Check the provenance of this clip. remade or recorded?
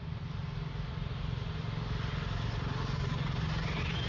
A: recorded